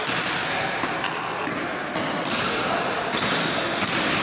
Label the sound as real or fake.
real